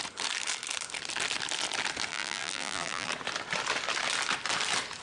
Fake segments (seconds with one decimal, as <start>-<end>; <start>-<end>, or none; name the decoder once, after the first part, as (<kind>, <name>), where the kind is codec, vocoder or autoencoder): 2.1-3.1 (vocoder, BigVGAN v2)